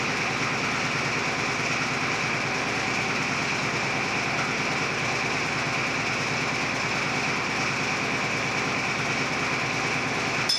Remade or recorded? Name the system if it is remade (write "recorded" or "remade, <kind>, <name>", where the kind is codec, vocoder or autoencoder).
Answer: recorded